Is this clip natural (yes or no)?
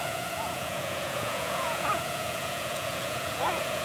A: no